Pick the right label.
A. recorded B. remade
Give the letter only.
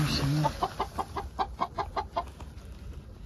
A